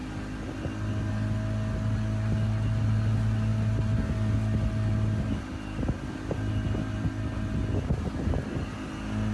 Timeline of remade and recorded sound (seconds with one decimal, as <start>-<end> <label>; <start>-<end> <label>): 0.0-9.3 recorded

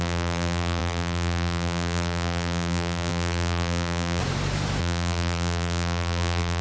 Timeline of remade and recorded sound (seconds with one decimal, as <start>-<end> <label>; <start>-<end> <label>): 0.0-4.2 remade; 4.2-4.8 recorded; 4.8-6.6 remade

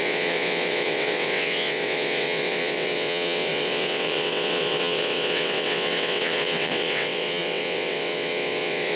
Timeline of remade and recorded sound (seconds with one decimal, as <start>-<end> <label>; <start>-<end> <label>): 0.0-9.0 remade

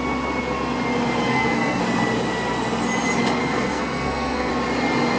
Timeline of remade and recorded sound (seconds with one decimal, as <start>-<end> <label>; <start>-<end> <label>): 0.0-1.3 recorded; 1.3-1.8 remade; 1.8-3.4 recorded; 3.4-4.5 remade; 4.5-5.2 recorded

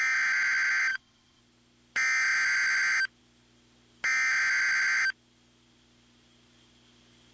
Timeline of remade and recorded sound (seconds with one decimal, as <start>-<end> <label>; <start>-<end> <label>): 0.0-0.9 recorded; 0.9-1.4 remade; 1.4-7.3 recorded

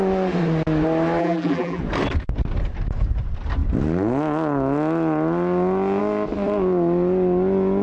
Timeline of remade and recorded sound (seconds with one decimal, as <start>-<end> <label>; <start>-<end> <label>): 0.0-1.2 recorded; 1.2-1.8 remade; 1.8-7.8 recorded